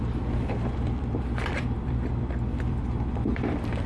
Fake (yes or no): yes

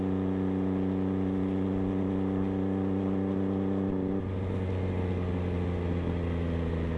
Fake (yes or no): no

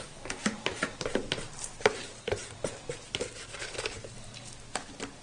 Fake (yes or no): no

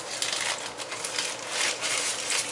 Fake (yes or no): no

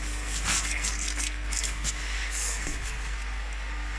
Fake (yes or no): yes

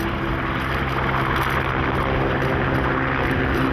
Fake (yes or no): no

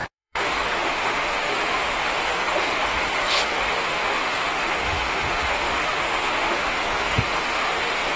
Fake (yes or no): yes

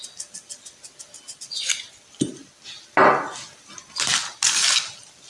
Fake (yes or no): no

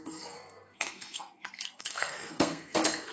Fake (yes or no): yes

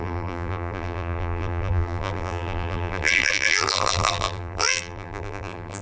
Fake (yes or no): yes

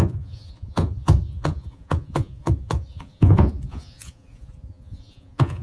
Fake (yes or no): yes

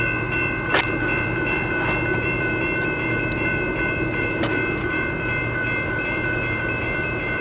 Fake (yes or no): yes